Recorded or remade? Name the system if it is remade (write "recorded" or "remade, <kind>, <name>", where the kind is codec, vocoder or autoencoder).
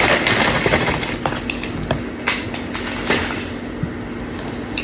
recorded